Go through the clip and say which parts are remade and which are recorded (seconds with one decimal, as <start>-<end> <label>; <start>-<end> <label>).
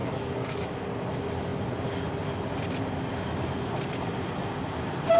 0.0-0.7 remade; 0.7-5.2 recorded